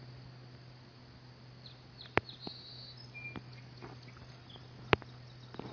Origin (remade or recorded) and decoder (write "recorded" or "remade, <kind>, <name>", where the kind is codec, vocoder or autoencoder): recorded